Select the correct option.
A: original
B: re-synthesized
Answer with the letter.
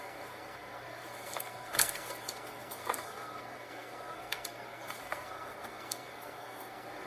B